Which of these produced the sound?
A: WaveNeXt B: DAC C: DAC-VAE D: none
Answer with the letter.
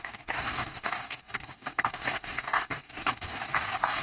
B